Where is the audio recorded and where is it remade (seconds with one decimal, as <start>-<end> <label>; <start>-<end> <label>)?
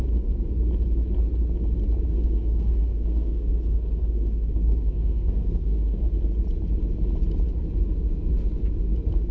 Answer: 0.0-2.1 recorded; 2.1-6.1 remade; 6.1-9.3 recorded